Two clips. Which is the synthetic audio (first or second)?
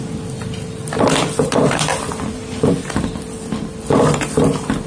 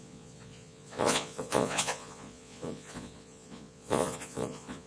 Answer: second